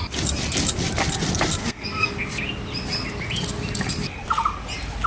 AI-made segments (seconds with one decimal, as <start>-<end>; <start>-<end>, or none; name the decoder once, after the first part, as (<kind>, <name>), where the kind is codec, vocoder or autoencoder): 1.6-2.1 (codec, SNAC)